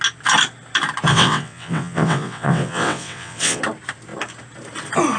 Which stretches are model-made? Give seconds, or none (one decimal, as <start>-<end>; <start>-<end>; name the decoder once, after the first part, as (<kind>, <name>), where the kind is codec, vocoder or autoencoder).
1.1-3.6 (vocoder, WaveNeXt)